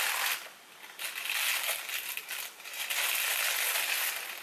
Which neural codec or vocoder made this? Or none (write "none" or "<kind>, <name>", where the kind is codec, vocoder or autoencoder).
none